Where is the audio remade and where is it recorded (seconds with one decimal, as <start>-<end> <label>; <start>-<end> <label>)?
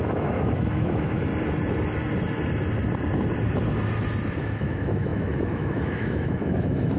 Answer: 0.0-1.3 remade; 1.3-4.3 recorded; 4.3-7.0 remade